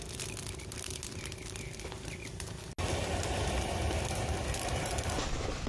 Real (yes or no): yes